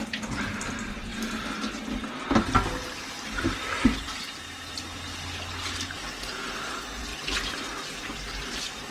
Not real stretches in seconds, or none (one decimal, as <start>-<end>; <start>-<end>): none